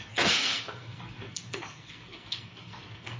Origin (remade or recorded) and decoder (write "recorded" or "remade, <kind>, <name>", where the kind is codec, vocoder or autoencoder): remade, codec, SNAC